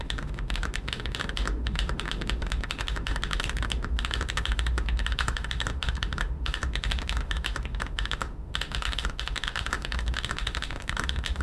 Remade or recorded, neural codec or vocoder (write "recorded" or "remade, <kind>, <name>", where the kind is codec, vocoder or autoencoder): remade, autoencoder, DAC-VAE